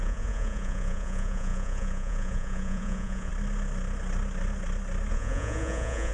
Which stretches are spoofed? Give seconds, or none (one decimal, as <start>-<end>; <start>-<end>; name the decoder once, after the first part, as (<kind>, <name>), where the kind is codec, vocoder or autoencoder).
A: 0.0-3.3 (vocoder, Vocos); 5.1-6.1